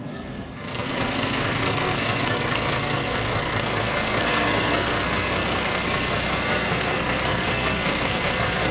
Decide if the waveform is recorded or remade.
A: remade